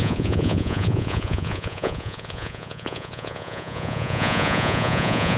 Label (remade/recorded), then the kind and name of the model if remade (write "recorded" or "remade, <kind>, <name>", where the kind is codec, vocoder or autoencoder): remade, vocoder, Vocos